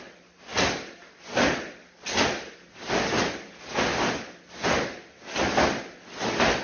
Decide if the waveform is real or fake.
real